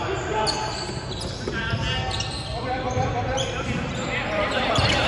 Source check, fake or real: real